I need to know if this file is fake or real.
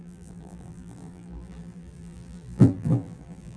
fake